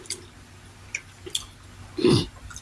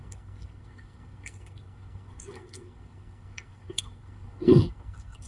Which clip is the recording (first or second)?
first